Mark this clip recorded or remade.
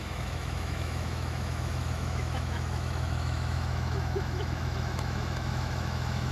remade